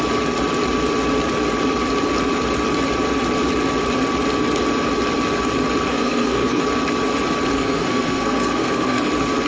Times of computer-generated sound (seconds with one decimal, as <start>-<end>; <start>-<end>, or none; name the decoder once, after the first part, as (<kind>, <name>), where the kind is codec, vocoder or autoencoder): 5.9-6.6 (codec, SNAC); 7.5-9.1